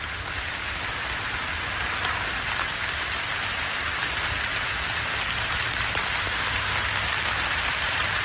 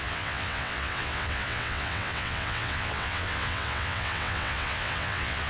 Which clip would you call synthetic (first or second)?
second